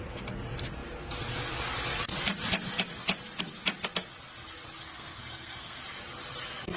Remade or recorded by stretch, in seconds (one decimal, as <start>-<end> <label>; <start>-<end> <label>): 0.0-4.8 recorded; 4.8-5.8 remade; 5.8-6.8 recorded